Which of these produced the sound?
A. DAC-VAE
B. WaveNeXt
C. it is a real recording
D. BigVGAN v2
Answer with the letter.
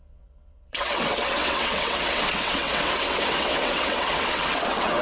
B